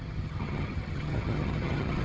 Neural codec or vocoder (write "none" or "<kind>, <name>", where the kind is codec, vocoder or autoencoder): vocoder, HiFi-GAN